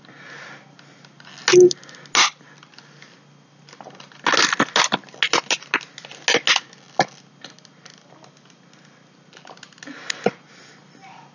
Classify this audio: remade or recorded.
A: recorded